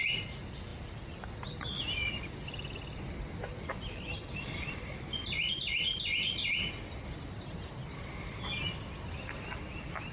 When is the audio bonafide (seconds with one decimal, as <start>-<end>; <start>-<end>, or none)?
0.0-10.1